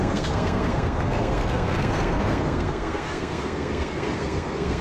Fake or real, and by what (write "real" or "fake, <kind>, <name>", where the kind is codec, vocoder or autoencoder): fake, codec, SNAC